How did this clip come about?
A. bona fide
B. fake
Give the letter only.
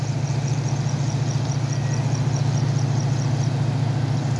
A